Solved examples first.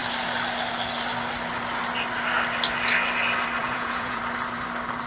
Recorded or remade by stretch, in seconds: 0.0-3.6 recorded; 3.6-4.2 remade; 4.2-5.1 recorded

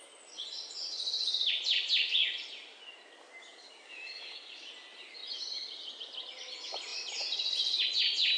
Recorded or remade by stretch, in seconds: 0.0-3.4 recorded; 3.4-4.7 remade; 4.7-8.4 recorded

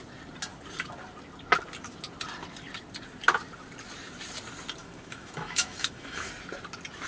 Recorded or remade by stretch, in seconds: 0.0-4.8 recorded; 4.8-6.3 remade; 6.3-7.1 recorded

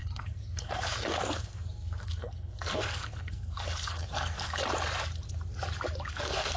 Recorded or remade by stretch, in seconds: 0.0-4.6 remade; 4.6-6.1 recorded; 6.1-6.6 remade

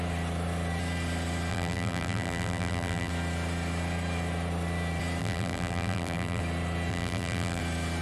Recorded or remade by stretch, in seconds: 0.0-1.5 recorded; 1.5-3.1 remade; 3.1-5.2 recorded; 5.2-6.4 remade; 6.4-6.9 recorded; 6.9-7.6 remade; 7.6-8.0 recorded

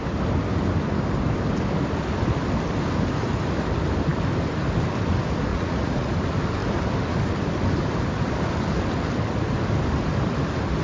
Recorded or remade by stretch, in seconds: 0.0-5.5 recorded; 5.5-6.1 remade; 6.1-10.8 recorded